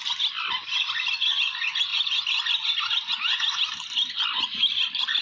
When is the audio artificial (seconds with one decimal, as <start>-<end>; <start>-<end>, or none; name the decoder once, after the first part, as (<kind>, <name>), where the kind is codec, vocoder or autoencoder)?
none